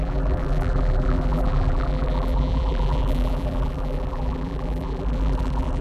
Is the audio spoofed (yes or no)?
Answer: yes